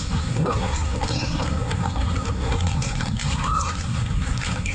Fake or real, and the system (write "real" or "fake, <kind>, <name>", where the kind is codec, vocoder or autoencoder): fake, codec, SNAC